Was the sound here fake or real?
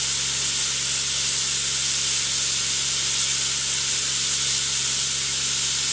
real